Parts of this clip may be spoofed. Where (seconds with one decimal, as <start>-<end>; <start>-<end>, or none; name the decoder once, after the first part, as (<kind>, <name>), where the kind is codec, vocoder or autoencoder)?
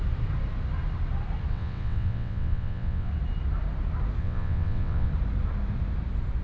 1.5-3.1 (vocoder, WaveNeXt); 4.2-5.1